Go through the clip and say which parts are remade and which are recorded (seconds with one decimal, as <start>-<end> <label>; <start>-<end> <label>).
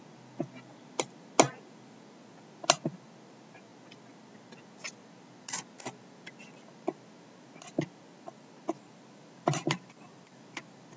0.0-11.0 recorded